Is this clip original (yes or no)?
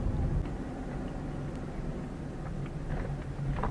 yes